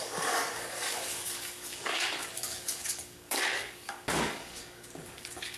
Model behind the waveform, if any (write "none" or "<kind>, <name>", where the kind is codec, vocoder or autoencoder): codec, DAC